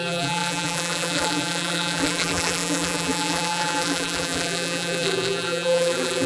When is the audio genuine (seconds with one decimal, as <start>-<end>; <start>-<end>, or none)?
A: none